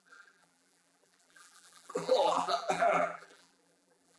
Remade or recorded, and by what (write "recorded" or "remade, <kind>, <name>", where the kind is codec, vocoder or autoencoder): remade, vocoder, BigVGAN v2